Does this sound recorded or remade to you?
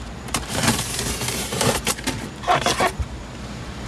remade